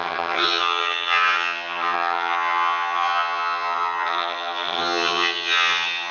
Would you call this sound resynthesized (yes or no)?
yes